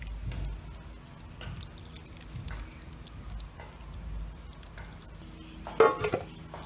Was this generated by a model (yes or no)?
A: no